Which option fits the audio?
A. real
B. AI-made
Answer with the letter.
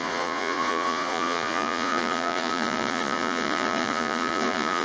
B